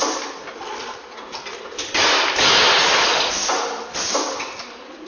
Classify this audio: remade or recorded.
recorded